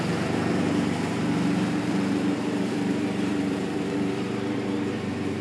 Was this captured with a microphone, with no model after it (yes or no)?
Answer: no